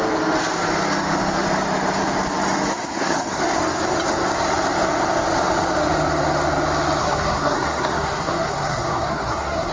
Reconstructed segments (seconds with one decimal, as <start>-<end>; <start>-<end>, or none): 2.7-3.4; 7.0-9.7